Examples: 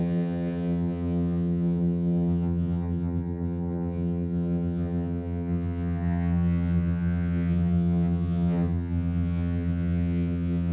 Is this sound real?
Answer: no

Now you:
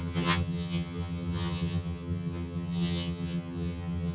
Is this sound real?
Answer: no